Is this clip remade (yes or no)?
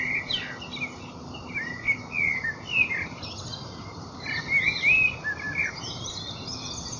no